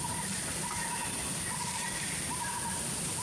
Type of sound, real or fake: real